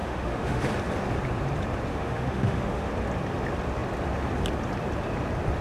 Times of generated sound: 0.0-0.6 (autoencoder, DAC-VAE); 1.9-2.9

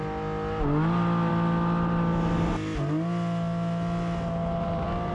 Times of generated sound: none

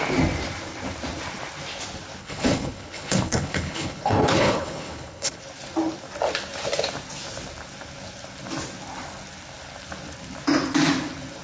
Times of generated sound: 2.2-5.4 (codec, HILCodec)

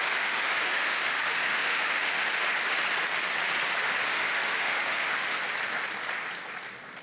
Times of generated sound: 0.0-2.2 (autoencoder, DAC-VAE); 4.1-5.4

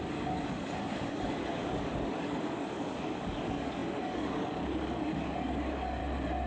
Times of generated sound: 0.0-6.0 (codec, DAC)

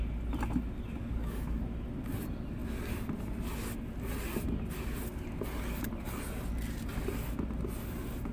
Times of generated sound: 1.0-1.6 (codec, DAC)

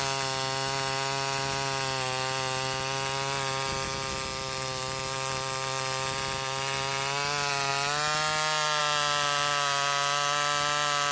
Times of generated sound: none